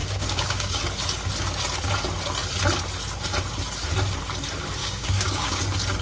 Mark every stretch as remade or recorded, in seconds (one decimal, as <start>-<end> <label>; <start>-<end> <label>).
0.0-0.8 remade; 0.8-4.8 recorded; 4.8-5.6 remade; 5.6-6.0 recorded